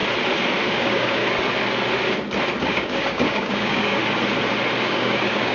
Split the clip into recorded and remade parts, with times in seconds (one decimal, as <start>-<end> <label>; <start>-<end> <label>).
0.0-0.7 recorded; 0.7-1.2 remade; 1.2-2.6 recorded; 2.6-4.0 remade; 4.0-4.8 recorded; 4.8-5.5 remade